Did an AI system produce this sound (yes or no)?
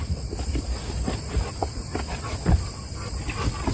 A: no